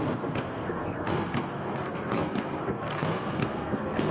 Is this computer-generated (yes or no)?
yes